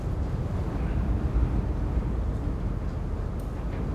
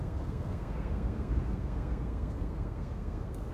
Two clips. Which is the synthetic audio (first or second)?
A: second